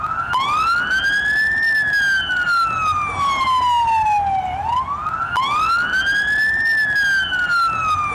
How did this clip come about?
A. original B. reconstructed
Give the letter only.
A